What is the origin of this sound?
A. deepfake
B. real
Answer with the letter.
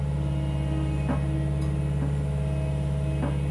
B